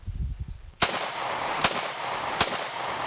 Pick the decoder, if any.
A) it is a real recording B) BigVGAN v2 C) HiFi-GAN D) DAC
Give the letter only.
A